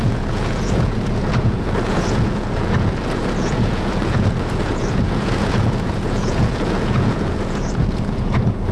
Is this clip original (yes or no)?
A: no